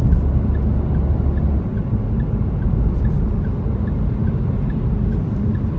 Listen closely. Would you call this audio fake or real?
real